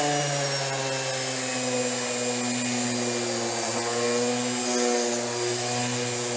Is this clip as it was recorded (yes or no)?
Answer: yes